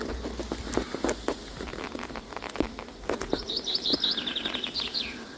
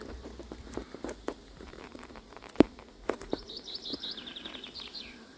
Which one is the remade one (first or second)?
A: second